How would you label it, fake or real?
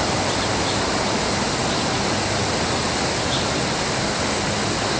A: real